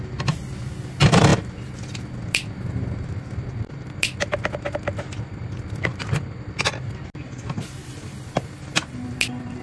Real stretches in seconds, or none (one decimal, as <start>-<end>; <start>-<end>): 0.0-9.6